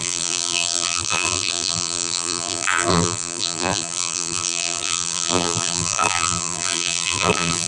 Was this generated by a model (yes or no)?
yes